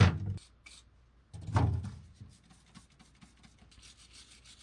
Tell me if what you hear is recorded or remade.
recorded